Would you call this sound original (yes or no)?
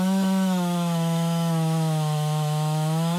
no